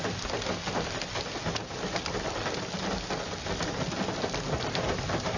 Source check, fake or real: real